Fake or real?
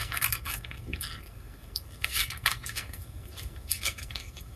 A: fake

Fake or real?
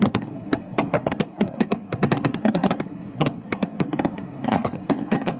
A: fake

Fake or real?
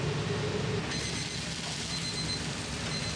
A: real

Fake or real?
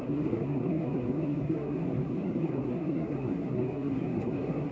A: fake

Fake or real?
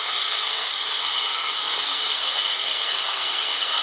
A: fake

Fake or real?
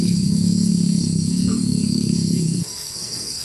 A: fake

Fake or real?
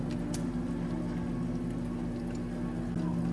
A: real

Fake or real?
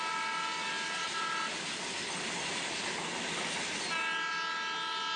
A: real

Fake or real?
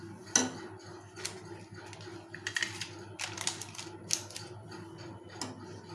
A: real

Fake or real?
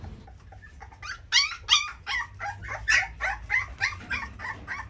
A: real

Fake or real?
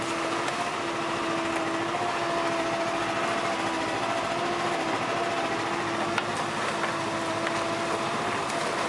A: real